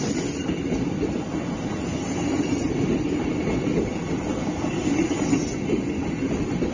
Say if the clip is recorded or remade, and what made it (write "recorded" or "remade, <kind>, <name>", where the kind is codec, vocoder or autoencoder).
recorded